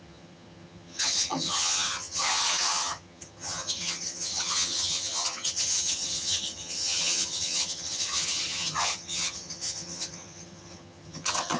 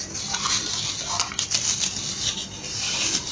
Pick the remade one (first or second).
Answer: first